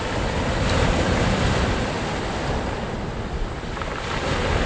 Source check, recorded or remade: recorded